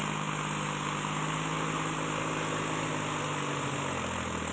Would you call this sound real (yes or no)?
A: yes